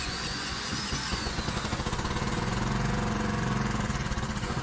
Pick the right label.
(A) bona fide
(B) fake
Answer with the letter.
B